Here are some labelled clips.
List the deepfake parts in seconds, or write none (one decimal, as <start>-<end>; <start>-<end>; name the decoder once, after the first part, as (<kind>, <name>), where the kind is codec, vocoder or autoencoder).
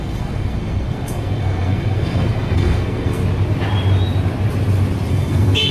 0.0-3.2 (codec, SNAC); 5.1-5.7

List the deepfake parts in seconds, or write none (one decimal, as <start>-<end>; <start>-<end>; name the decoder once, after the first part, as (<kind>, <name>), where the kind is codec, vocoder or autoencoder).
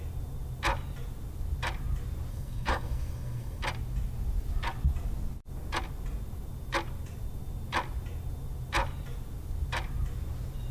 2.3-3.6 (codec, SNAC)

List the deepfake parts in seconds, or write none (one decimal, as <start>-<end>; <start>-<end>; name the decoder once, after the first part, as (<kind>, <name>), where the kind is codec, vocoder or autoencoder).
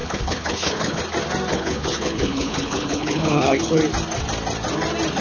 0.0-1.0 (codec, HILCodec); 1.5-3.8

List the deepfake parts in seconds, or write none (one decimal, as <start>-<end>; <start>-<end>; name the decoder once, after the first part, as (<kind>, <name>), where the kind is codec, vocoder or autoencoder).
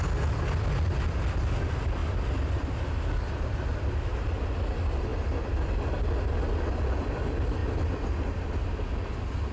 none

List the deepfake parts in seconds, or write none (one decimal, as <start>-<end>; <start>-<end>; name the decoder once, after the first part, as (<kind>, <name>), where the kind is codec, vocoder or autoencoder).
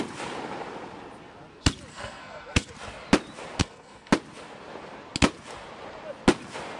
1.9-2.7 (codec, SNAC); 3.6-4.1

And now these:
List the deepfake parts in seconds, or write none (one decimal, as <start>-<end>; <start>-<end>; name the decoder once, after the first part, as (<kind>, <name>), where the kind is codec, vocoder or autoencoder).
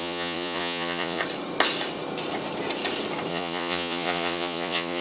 0.0-1.2 (vocoder, Vocos); 3.3-5.0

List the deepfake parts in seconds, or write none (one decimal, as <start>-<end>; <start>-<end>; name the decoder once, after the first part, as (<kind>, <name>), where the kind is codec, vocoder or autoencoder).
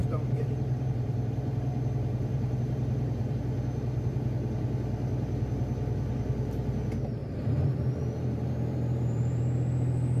0.0-3.4 (vocoder, BigVGAN v2); 7.2-9.4